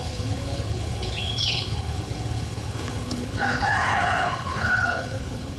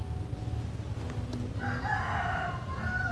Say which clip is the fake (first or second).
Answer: first